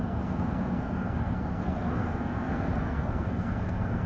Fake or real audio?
fake